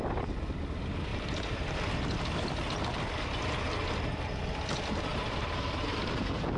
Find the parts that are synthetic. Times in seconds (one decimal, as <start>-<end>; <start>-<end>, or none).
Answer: 1.1-2.8; 5.1-6.6